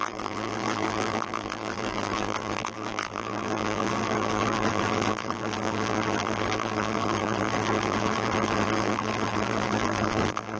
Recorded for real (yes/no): no